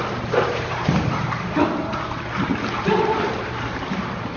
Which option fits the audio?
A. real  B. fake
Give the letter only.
B